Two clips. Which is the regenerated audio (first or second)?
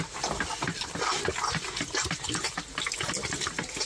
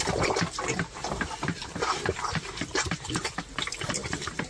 second